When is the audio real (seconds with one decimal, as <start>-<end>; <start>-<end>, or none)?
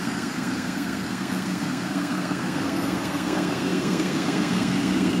none